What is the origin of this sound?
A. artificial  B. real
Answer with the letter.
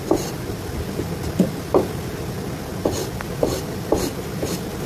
B